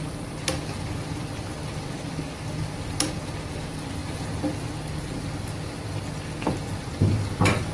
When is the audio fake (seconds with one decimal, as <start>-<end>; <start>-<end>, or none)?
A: 0.0-4.0; 6.5-7.7